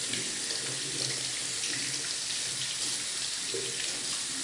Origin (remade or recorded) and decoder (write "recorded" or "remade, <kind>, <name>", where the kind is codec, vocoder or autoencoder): recorded